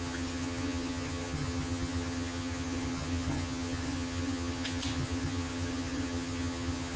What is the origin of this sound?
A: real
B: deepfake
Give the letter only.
B